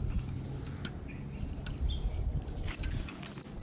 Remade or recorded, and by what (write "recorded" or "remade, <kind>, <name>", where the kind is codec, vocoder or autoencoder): recorded